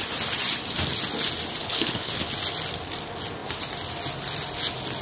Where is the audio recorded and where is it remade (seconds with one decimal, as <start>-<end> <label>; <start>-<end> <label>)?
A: 0.0-1.6 recorded; 1.6-2.1 remade; 2.1-5.0 recorded